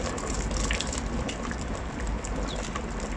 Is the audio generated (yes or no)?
no